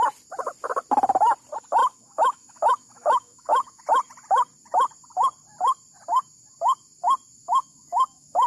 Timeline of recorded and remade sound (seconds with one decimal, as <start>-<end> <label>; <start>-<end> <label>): 0.0-1.8 recorded; 1.8-3.8 remade; 3.8-7.4 recorded; 7.4-8.5 remade